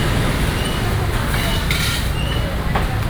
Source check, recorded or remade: recorded